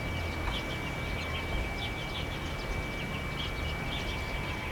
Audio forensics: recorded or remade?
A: recorded